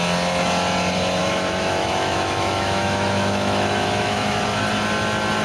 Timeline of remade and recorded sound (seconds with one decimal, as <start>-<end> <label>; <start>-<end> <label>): 0.0-1.2 recorded; 1.2-4.4 remade; 4.4-5.4 recorded